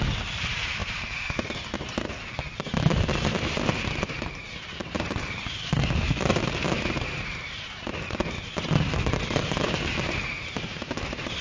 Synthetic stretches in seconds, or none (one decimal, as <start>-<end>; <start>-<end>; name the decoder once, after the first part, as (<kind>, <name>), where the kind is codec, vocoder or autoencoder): 0.8-1.9 (vocoder, BigVGAN v2); 4.8-7.8; 10.4-11.4